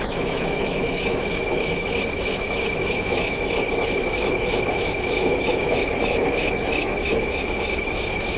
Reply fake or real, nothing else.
fake